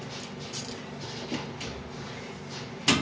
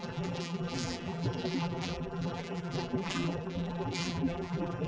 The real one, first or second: first